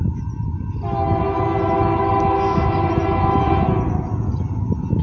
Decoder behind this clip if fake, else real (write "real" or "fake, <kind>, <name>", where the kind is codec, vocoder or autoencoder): real